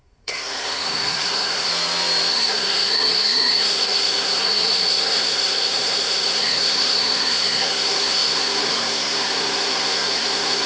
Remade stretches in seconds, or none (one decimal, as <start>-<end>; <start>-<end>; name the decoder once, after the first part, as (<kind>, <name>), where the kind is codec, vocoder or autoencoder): 0.0-1.7 (codec, SNAC); 2.3-10.7